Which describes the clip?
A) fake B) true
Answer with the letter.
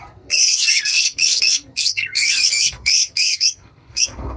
A